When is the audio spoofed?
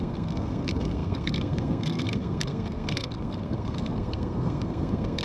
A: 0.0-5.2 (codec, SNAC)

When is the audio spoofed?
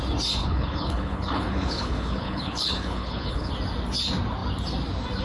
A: 0.4-3.5 (codec, HILCodec)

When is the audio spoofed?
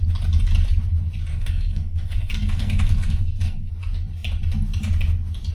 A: 1.3-3.7 (codec, SNAC)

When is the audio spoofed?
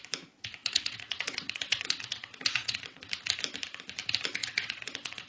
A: 0.6-3.1 (vocoder, WaveNeXt); 4.4-5.3